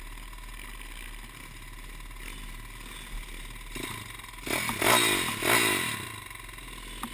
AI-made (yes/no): no